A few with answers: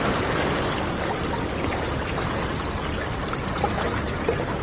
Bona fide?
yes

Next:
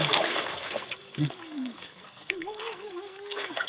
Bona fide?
no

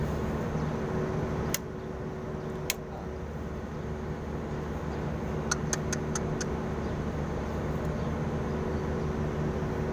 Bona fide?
yes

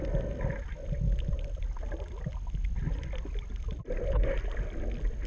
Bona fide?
yes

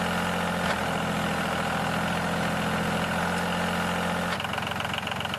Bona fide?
yes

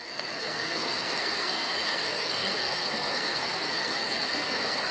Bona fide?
no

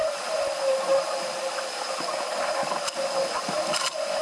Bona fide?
yes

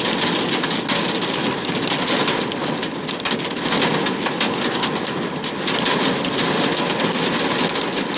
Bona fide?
yes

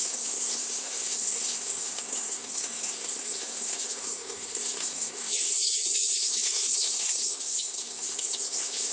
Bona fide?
no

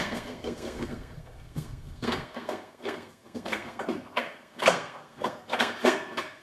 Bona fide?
no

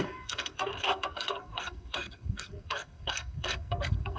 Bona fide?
no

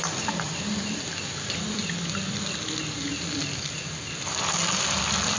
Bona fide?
yes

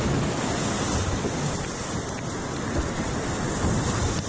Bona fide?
yes